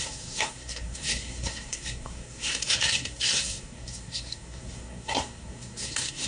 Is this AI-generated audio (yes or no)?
yes